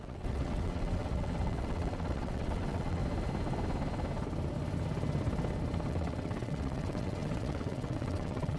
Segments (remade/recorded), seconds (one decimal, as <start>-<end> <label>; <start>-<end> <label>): 0.0-3.0 remade; 3.0-5.9 recorded; 5.9-8.6 remade